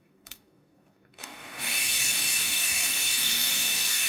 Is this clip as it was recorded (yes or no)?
no